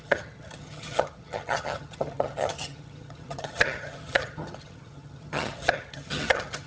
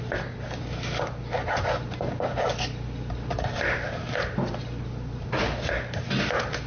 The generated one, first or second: first